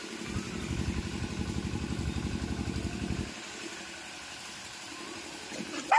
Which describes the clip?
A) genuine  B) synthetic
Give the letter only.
A